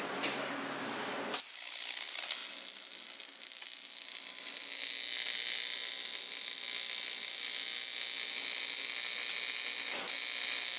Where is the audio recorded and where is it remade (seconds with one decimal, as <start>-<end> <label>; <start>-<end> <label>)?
0.0-10.8 recorded